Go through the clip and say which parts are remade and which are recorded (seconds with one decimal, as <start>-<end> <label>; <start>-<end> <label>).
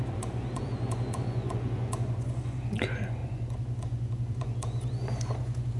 0.0-5.8 remade